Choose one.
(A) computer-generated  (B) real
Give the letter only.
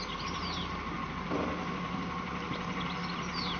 B